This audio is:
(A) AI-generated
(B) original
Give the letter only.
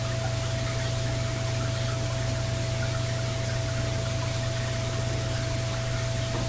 B